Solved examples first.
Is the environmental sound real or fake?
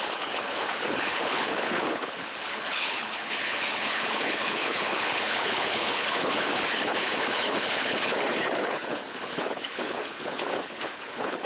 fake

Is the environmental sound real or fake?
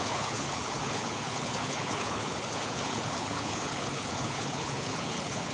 fake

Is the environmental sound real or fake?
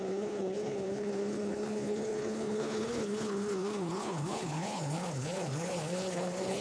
fake